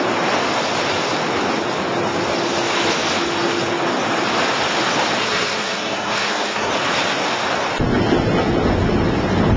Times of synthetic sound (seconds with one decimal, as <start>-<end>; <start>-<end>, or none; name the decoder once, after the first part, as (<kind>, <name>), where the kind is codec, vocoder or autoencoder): 5.2-6.7 (codec, SNAC)